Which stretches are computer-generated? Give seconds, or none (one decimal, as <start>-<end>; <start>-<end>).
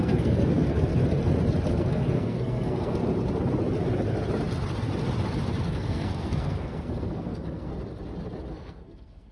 0.0-0.9; 1.7-3.0; 5.6-7.7; 8.5-9.3